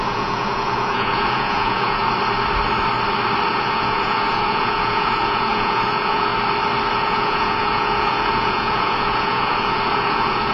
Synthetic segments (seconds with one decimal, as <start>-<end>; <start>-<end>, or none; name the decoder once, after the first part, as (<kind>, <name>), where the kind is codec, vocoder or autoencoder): 0.0-2.0 (vocoder, Vocos); 3.5-6.3; 6.9-10.5